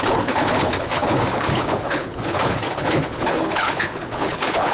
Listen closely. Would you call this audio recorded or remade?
remade